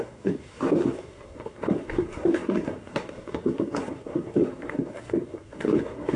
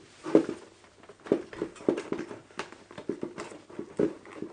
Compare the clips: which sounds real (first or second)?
second